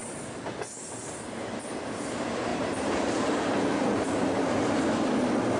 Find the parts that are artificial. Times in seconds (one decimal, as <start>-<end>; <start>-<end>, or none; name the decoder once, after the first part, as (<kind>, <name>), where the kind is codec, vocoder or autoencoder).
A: 2.5-4.8 (vocoder, BigVGAN v2)